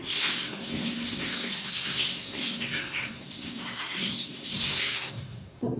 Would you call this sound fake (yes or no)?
yes